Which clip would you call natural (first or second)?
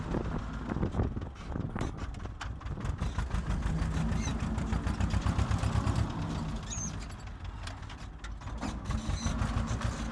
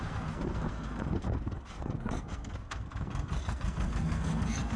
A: first